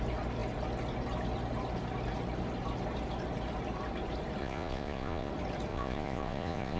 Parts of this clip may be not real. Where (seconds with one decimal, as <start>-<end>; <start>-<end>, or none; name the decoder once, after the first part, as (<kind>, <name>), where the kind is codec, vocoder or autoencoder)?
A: 4.4-5.3 (vocoder, Vocos); 5.7-6.8